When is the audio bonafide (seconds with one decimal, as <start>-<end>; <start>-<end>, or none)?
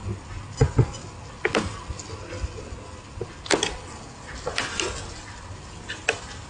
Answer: 0.0-6.5